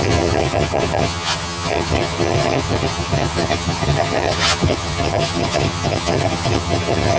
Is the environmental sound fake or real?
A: fake